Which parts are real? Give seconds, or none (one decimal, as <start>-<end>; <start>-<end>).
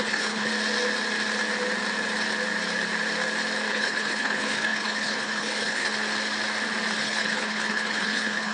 0.5-3.7; 5.9-7.0